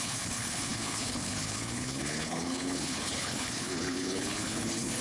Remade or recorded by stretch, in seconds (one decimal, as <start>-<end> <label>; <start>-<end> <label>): 0.0-5.0 remade